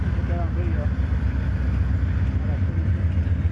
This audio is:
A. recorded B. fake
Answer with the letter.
A